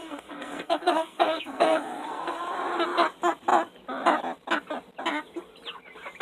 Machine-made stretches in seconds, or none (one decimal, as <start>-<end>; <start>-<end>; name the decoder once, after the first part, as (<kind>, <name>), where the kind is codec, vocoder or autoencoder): 0.0-2.4 (codec, SNAC)